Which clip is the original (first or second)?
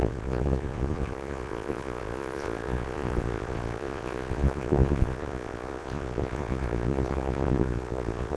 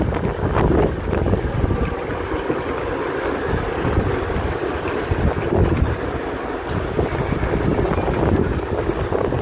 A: second